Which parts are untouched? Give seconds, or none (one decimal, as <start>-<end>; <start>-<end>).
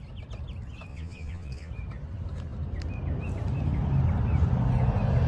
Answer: 0.0-0.9; 1.7-5.3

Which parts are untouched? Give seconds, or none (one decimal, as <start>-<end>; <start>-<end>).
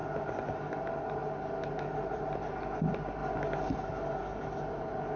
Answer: 0.0-5.2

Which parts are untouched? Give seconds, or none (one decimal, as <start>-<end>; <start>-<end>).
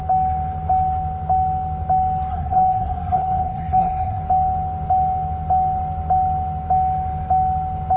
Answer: 0.0-2.3; 4.2-8.0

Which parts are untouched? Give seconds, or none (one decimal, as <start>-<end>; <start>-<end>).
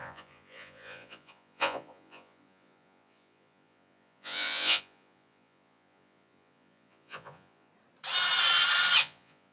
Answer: 7.7-9.0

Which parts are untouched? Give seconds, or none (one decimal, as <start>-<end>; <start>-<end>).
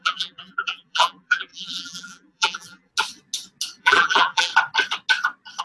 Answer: 2.9-3.8; 4.5-5.6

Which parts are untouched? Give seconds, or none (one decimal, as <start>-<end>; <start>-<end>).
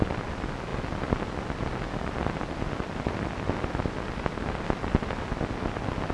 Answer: 0.0-6.1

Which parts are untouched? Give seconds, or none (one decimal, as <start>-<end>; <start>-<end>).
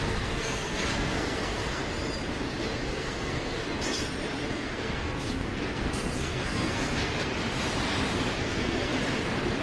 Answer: 1.8-2.8; 3.6-4.5; 7.3-8.4; 8.9-9.6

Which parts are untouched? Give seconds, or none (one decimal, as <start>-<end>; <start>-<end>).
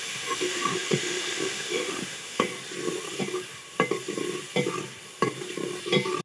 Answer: 2.5-6.2